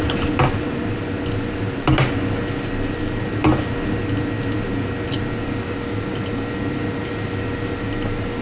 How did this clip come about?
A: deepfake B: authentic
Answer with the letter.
B